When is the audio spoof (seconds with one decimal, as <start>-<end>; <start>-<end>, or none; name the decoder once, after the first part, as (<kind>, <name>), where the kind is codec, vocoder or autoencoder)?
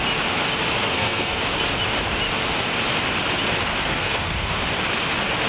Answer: 0.8-1.4 (codec, SNAC); 3.7-4.6